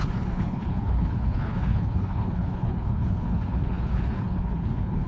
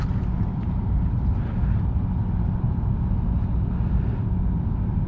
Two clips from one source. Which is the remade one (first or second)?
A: first